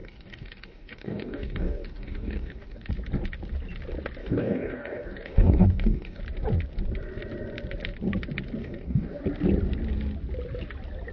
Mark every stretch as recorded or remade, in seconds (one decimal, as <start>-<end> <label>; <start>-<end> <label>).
0.0-2.9 remade; 2.9-4.2 recorded; 4.2-6.2 remade; 6.2-8.6 recorded; 8.6-9.2 remade; 9.2-11.1 recorded